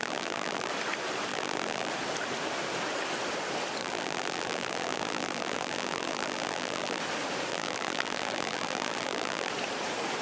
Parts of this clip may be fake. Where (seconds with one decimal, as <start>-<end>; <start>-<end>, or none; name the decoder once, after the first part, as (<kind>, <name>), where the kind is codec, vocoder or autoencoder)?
0.0-0.7 (vocoder, BigVGAN v2); 1.3-1.9; 3.8-7.0; 7.5-9.5